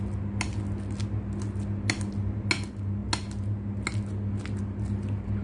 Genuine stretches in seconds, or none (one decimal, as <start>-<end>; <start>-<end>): 0.0-5.4